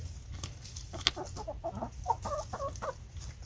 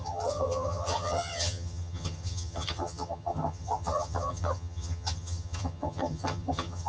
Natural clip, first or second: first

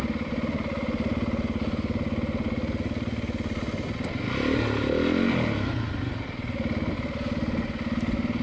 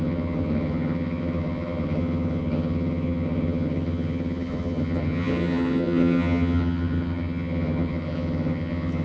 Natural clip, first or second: first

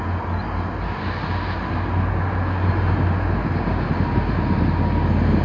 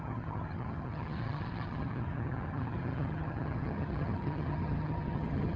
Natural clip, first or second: first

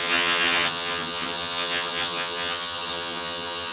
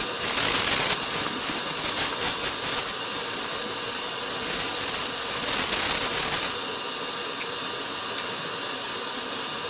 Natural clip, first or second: second